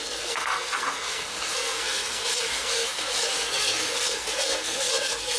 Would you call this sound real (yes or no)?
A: no